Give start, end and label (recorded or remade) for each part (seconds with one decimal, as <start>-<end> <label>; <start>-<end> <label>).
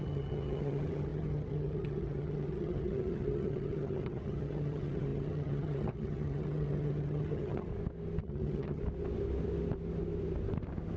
0.0-7.7 remade; 7.7-8.2 recorded; 8.2-8.8 remade; 8.8-11.0 recorded